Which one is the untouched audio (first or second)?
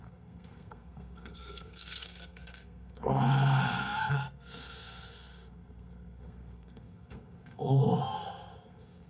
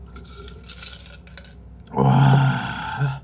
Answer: second